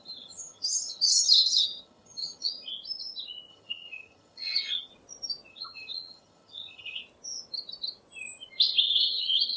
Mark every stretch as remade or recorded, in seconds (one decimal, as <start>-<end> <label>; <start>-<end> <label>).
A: 0.0-2.7 remade; 2.7-3.5 recorded; 3.5-4.9 remade; 4.9-5.5 recorded; 5.5-7.0 remade; 7.0-8.8 recorded; 8.8-9.6 remade

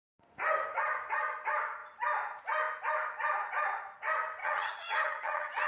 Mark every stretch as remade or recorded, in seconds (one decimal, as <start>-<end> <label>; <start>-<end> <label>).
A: 0.0-4.4 recorded; 4.4-5.7 remade

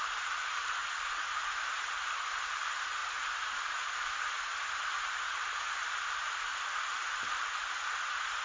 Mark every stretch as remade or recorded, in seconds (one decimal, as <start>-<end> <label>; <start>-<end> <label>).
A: 0.0-8.4 recorded

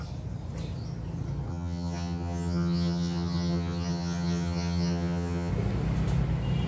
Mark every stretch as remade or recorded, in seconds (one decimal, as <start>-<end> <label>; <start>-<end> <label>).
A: 0.0-1.5 recorded; 1.5-5.5 remade; 5.5-6.7 recorded

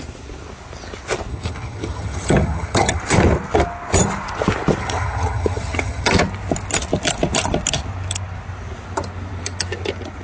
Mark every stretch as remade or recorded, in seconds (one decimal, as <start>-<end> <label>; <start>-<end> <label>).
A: 0.0-1.3 recorded; 1.3-3.0 remade; 3.0-4.8 recorded; 4.8-6.1 remade; 6.1-10.2 recorded

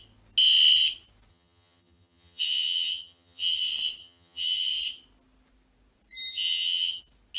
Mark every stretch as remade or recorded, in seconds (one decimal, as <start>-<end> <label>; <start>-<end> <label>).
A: 0.0-1.3 recorded; 1.3-3.6 remade; 3.6-4.0 recorded; 4.0-4.7 remade; 4.7-6.3 recorded; 6.3-7.0 remade; 7.0-7.4 recorded